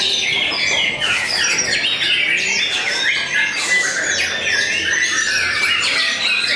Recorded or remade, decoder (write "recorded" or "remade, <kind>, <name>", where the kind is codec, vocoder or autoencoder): recorded